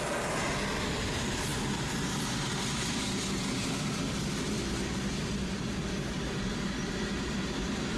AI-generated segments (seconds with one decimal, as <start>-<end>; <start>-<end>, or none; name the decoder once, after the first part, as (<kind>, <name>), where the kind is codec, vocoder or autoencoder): none